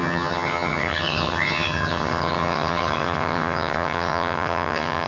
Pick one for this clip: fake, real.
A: fake